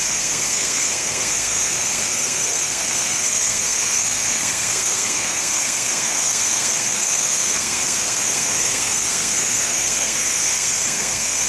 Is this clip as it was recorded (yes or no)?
no